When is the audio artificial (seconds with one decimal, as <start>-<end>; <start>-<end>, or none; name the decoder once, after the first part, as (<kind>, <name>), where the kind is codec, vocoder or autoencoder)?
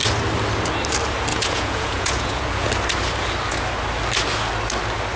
1.3-2.7 (vocoder, Vocos)